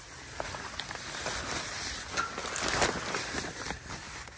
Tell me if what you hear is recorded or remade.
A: recorded